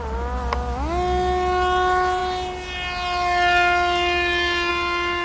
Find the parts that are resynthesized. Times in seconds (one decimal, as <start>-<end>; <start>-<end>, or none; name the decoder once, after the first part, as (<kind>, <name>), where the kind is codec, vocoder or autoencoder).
none